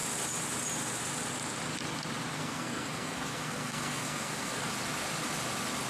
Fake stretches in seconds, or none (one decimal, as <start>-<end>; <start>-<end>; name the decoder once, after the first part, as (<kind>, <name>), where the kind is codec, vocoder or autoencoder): 2.3-4.7 (codec, SNAC)